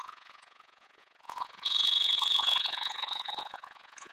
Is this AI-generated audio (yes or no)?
yes